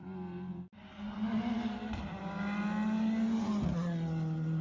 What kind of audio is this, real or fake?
real